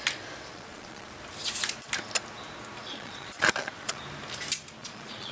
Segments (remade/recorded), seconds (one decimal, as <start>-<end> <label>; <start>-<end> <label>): 0.0-0.5 recorded; 0.5-1.1 remade; 1.1-2.9 recorded; 2.9-4.0 remade; 4.0-4.8 recorded; 4.8-5.3 remade